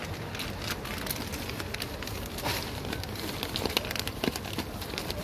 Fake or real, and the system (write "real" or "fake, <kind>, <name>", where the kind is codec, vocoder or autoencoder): real